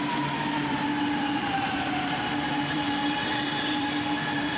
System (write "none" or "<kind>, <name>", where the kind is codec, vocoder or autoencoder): vocoder, BigVGAN v2